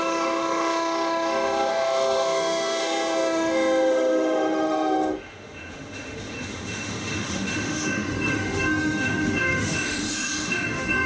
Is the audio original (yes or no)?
no